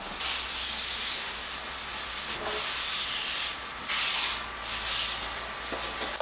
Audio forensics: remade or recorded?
recorded